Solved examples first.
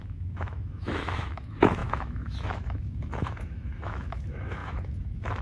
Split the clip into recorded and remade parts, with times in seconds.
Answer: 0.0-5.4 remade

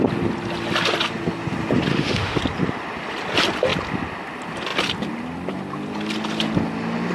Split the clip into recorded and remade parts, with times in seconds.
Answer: 0.0-1.9 recorded; 1.9-2.4 remade; 2.4-7.1 recorded